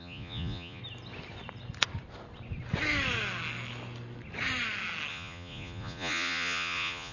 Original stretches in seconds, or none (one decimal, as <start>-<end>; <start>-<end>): 0.8-5.1